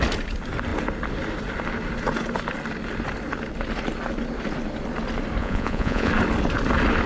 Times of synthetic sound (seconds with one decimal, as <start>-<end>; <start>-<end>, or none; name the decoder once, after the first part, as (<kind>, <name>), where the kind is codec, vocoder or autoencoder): 5.4-6.1 (vocoder, Vocos)